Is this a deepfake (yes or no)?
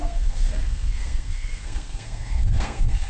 yes